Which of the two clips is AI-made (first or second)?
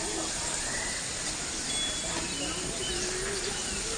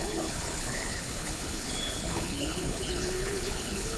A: second